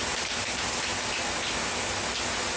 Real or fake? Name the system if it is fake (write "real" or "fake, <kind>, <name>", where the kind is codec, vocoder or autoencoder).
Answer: real